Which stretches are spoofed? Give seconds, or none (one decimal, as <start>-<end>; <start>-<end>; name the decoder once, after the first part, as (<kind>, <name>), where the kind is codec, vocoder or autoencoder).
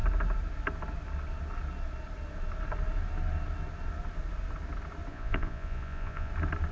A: 5.1-6.3 (vocoder, Vocos)